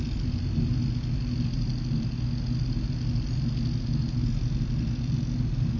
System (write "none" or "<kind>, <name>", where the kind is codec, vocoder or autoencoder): none